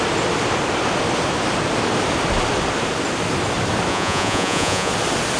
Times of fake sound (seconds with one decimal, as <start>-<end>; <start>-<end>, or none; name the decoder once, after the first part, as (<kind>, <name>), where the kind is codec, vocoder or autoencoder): 3.9-4.9 (vocoder, Vocos)